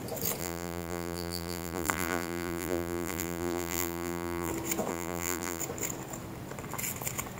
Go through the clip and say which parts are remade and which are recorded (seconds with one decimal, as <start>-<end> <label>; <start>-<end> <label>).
0.0-0.4 recorded; 0.4-4.5 remade; 4.5-4.9 recorded; 4.9-5.6 remade; 5.6-7.4 recorded